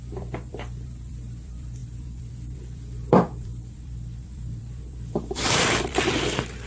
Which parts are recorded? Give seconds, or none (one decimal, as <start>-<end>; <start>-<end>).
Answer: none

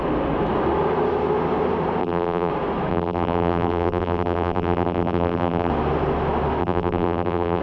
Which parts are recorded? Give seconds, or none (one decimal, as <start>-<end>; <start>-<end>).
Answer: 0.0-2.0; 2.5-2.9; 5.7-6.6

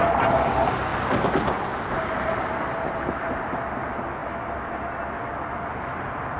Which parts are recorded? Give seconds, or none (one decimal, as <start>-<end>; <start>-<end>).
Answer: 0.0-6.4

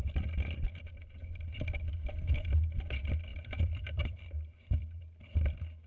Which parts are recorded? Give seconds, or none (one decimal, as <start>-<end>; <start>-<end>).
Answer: 0.0-3.3; 5.0-5.9

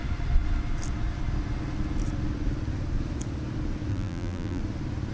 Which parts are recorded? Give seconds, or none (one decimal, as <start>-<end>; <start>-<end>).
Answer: 0.0-3.9; 4.6-5.1

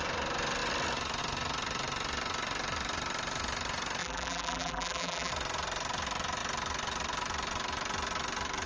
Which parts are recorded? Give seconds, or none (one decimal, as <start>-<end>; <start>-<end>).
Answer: 0.0-4.0; 5.3-8.7